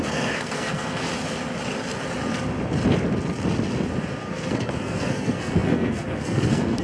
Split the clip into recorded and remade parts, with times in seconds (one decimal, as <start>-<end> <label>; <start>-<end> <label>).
0.0-1.1 remade; 1.1-4.3 recorded; 4.3-6.8 remade